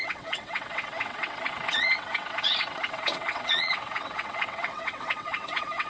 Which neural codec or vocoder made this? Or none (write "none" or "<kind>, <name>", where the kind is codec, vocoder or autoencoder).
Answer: vocoder, WaveNeXt